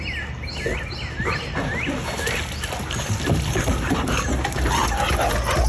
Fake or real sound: real